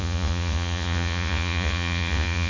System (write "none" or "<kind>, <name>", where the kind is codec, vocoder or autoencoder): vocoder, Vocos